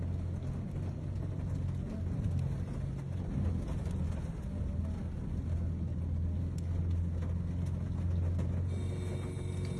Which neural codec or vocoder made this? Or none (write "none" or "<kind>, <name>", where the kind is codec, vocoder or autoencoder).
none